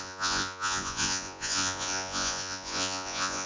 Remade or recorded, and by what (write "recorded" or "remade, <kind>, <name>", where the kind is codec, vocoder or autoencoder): remade, vocoder, Vocos